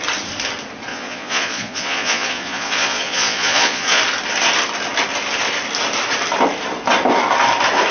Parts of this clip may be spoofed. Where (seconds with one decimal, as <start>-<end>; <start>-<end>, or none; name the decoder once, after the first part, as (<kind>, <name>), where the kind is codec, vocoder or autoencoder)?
0.9-4.0 (vocoder, Vocos)